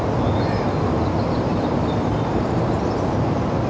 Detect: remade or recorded recorded